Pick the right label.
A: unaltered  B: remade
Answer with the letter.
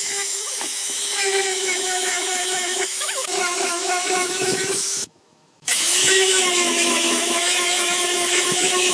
B